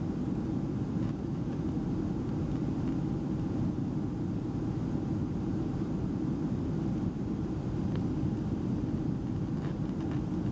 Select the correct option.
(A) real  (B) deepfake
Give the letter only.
A